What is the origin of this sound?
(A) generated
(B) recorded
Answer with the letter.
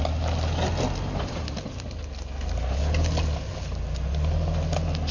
B